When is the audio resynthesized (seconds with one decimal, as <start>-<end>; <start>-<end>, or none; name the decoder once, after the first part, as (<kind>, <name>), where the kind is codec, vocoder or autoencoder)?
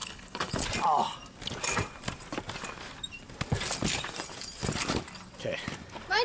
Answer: 0.0-0.6 (codec, HILCodec)